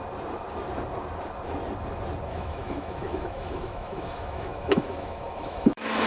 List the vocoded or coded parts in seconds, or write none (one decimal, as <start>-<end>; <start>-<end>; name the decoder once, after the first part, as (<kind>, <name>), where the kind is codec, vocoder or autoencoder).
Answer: 2.3-6.1 (autoencoder, DAC-VAE)